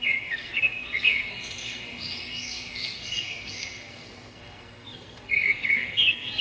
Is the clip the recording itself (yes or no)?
no